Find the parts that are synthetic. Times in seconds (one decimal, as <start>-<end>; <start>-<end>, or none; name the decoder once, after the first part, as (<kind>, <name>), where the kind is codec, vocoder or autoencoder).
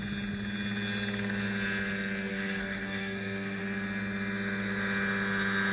2.3-3.6 (codec, SNAC)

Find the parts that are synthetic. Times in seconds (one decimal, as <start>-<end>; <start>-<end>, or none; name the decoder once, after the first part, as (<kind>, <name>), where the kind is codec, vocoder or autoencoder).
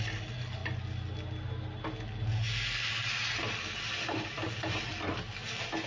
none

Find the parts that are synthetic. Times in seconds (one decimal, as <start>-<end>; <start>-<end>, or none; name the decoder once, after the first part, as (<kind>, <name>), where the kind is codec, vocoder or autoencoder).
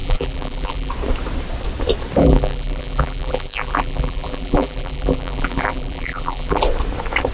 0.0-0.9 (vocoder, BigVGAN v2); 2.2-6.6